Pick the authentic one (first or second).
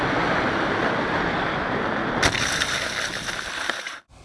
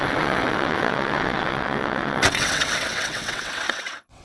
first